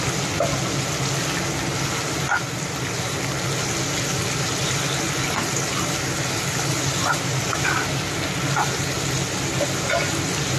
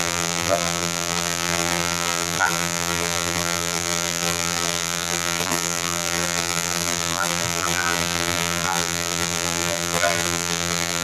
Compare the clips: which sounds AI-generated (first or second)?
second